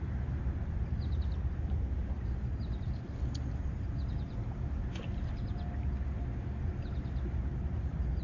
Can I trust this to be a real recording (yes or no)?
yes